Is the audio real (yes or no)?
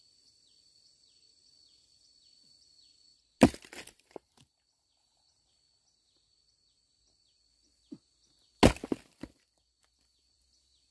yes